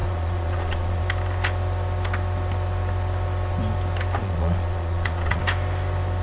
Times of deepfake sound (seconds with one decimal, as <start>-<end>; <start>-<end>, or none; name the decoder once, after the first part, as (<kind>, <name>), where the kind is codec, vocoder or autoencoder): 0.0-1.0 (vocoder, Vocos); 4.2-5.4